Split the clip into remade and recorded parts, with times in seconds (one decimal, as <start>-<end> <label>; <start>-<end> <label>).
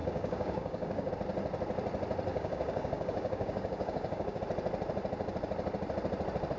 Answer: 0.0-1.1 remade; 1.1-2.3 recorded; 2.3-4.4 remade; 4.4-6.6 recorded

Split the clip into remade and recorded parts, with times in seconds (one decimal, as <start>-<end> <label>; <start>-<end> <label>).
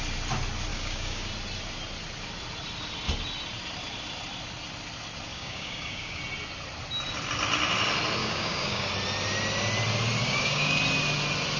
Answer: 0.0-0.7 recorded; 0.7-1.3 remade; 1.3-5.3 recorded; 5.3-6.2 remade; 6.2-8.2 recorded; 8.2-8.9 remade; 8.9-10.2 recorded; 10.2-10.8 remade; 10.8-11.6 recorded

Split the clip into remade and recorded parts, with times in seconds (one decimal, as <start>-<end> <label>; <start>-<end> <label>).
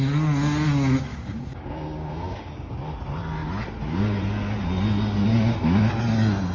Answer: 0.0-1.1 recorded; 1.1-2.7 remade; 2.7-6.5 recorded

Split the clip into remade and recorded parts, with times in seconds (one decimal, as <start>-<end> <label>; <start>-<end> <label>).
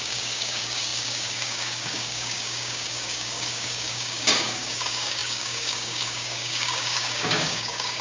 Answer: 0.0-8.0 remade